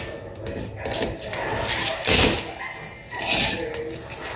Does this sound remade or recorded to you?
recorded